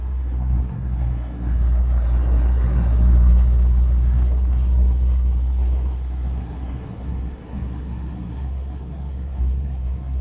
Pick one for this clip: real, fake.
fake